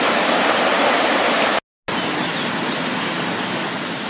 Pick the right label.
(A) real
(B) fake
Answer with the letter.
A